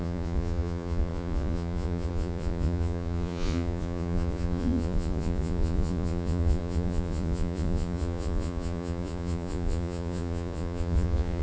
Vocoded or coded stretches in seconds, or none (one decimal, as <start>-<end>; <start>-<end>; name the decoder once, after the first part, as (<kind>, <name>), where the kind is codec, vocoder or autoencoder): 0.0-11.4 (vocoder, Vocos)